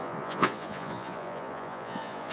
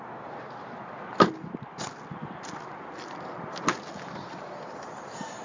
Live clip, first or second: second